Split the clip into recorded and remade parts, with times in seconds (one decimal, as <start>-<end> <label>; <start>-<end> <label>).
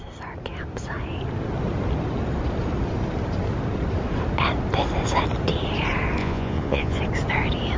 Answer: 0.0-6.2 recorded; 6.2-7.0 remade; 7.0-7.8 recorded